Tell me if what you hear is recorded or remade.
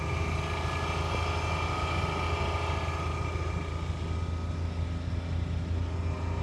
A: recorded